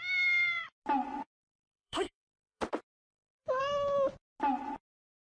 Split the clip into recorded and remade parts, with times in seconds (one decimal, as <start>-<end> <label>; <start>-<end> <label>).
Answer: 0.0-1.2 recorded; 1.2-2.6 remade; 2.6-3.1 recorded; 3.1-3.6 remade; 3.6-5.4 recorded